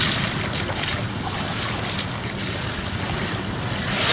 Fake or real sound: real